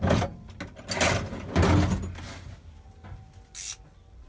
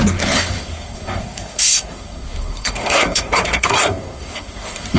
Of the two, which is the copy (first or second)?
second